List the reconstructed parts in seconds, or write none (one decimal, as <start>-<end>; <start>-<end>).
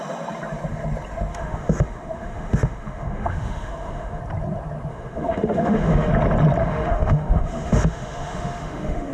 1.3-4.2; 4.9-6.1; 6.6-9.1